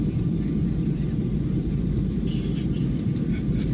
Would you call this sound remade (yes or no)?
yes